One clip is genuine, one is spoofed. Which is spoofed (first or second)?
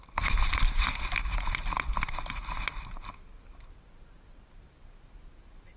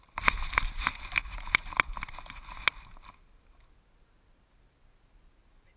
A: first